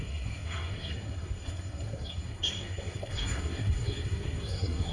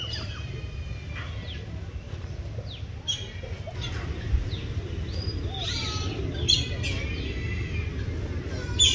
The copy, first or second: first